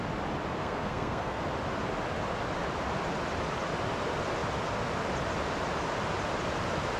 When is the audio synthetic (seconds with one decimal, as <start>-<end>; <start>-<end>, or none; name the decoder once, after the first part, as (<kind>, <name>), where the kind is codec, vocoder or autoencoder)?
0.6-1.4 (codec, SNAC)